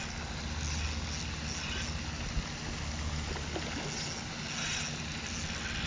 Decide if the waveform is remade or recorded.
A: recorded